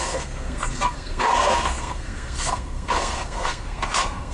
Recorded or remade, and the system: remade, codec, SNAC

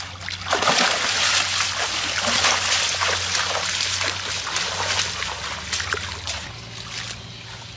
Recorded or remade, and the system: recorded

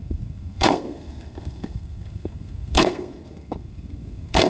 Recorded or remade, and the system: remade, codec, SNAC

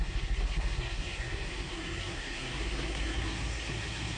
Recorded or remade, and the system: remade, codec, SNAC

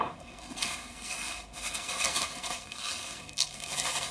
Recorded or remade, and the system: remade, codec, SNAC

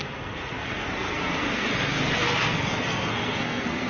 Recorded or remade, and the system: remade, codec, SNAC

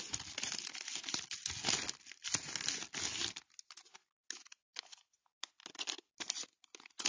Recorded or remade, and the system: recorded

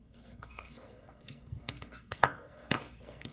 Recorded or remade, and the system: remade, codec, SNAC